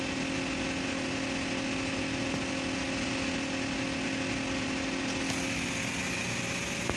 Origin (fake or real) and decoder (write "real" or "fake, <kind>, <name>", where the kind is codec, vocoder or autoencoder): real